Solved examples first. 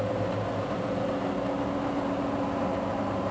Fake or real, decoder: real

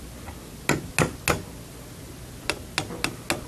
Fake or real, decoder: real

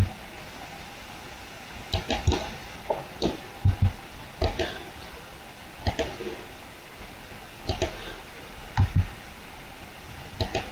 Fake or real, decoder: real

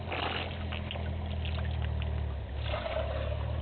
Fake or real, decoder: real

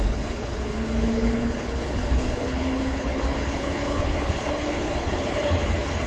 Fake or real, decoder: fake, codec, HILCodec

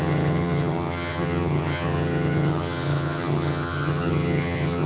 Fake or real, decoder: fake, vocoder, HiFi-GAN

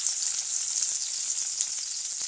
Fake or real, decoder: real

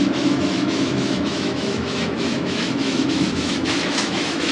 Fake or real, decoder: fake, autoencoder, DAC-VAE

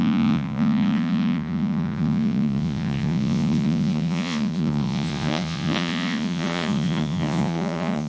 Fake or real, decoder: fake, vocoder, Vocos